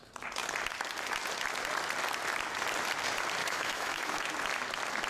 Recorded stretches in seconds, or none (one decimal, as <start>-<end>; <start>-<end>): 0.0-3.4; 4.3-5.1